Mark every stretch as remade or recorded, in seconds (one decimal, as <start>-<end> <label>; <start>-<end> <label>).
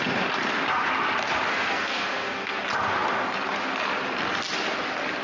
0.0-1.5 recorded; 1.5-2.6 remade; 2.6-5.2 recorded